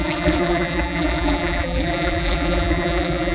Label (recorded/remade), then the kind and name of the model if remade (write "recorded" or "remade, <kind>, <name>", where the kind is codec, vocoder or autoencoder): remade, vocoder, BigVGAN v2